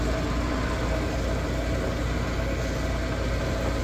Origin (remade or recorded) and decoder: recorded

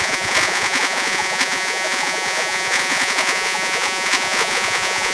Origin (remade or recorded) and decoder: remade, vocoder, Vocos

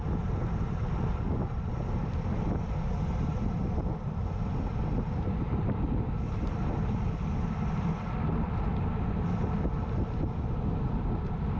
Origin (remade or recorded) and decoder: recorded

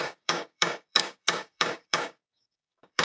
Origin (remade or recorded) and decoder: remade, codec, DAC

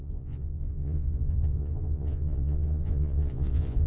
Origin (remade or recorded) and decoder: remade, vocoder, Vocos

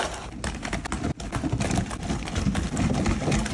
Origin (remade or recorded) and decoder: recorded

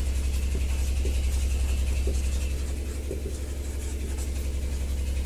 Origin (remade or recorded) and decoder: recorded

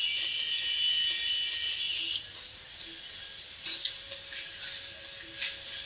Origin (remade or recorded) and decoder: recorded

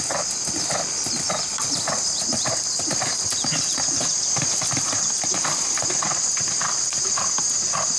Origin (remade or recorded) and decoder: recorded